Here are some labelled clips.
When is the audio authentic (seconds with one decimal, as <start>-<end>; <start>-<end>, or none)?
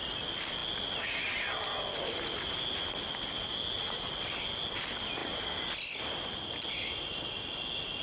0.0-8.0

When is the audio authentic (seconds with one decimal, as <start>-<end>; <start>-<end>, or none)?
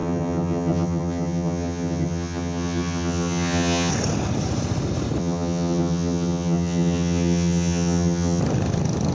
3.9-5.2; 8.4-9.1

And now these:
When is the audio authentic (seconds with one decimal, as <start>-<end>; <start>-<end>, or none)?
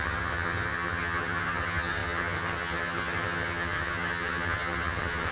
none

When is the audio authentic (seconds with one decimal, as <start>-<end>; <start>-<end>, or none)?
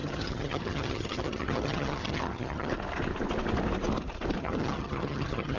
2.7-4.4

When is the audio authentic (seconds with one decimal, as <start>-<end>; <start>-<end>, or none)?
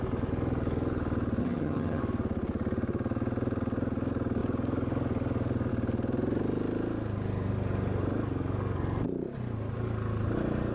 0.0-1.4; 2.0-10.7